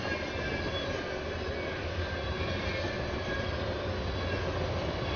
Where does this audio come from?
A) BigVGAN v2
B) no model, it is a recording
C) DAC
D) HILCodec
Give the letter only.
B